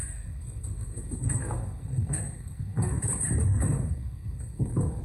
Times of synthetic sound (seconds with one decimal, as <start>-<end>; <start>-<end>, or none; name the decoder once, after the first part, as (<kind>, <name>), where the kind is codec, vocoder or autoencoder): 0.0-3.0 (codec, SNAC); 3.5-5.0